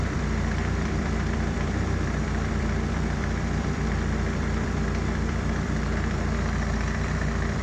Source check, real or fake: fake